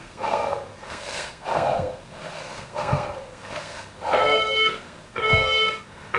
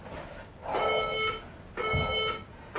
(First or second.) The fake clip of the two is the first